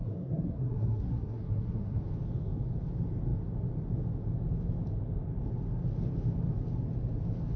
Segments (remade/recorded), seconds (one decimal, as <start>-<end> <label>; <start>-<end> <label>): 0.0-2.0 remade; 2.0-7.6 recorded